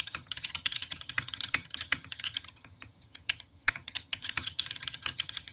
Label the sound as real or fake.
fake